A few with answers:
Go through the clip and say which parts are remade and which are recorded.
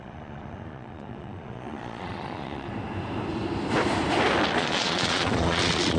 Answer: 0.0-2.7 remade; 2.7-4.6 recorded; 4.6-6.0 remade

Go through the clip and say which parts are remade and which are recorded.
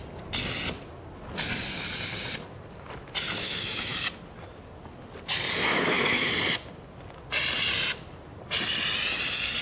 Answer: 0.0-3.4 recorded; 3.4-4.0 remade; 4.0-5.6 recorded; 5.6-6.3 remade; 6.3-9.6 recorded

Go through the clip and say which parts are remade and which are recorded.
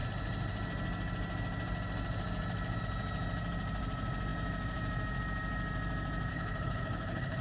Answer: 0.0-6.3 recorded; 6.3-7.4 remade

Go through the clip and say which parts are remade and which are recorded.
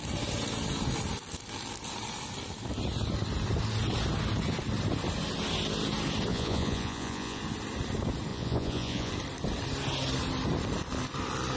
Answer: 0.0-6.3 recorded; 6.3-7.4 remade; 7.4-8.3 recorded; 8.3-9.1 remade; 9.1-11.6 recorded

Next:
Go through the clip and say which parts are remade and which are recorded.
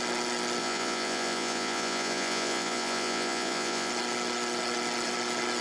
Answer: 0.0-0.6 recorded; 0.6-3.9 remade; 3.9-5.6 recorded